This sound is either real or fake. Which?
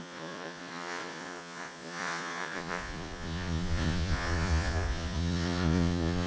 fake